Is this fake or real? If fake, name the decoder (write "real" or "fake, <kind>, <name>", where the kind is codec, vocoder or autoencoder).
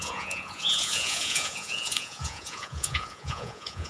fake, vocoder, Vocos